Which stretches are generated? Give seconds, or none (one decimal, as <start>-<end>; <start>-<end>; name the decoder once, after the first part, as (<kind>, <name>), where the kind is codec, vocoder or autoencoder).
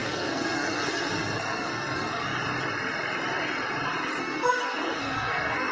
0.0-2.3 (codec, SNAC); 4.2-5.7